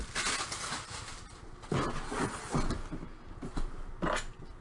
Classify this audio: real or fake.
real